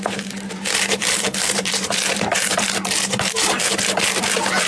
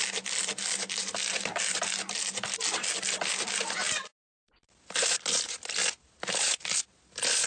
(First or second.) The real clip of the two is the second